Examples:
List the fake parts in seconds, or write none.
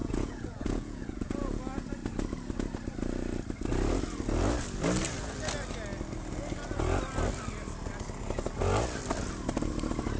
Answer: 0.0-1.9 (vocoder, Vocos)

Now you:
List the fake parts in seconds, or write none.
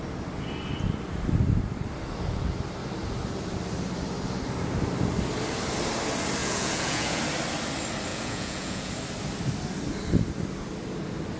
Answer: 6.4-7.2 (vocoder, Vocos); 8.1-8.9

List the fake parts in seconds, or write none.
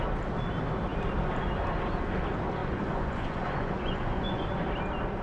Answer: 2.6-4.5 (vocoder, Vocos)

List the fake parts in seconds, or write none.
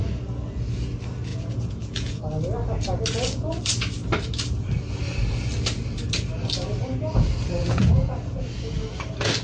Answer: 1.3-2.2 (vocoder, Vocos); 7.6-8.1